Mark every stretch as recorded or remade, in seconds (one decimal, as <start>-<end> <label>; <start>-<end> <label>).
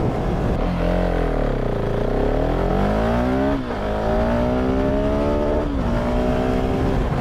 0.0-7.2 recorded